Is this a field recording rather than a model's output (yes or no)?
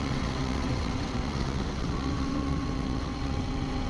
no